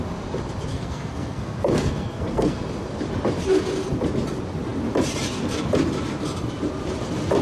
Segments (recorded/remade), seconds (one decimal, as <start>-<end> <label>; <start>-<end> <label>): 0.0-0.7 recorded; 0.7-2.6 remade; 2.6-7.4 recorded